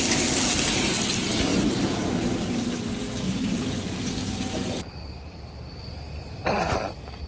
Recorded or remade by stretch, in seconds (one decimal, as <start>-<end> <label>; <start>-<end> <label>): 0.0-1.5 recorded; 1.5-2.7 remade; 2.7-7.3 recorded